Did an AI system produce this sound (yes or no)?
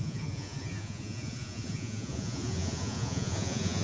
yes